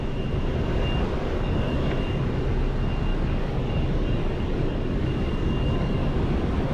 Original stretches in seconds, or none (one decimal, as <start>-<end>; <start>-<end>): 0.0-0.7; 2.2-3.1